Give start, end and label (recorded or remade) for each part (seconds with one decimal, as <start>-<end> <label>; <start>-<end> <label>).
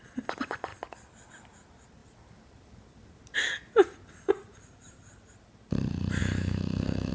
0.0-6.2 recorded; 6.2-7.1 remade